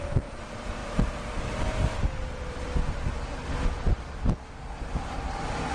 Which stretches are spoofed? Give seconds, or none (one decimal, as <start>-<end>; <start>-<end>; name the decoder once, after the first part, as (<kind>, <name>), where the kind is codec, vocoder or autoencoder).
none